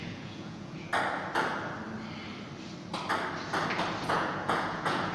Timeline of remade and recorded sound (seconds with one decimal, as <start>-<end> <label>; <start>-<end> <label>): 0.0-0.9 remade; 0.9-4.0 recorded; 4.0-5.1 remade